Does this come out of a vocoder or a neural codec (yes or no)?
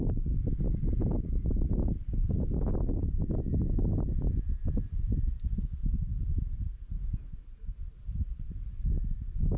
no